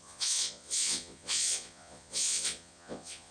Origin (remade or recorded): remade